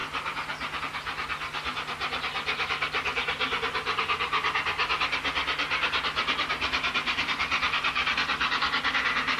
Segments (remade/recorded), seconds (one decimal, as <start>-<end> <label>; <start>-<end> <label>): 0.0-9.4 recorded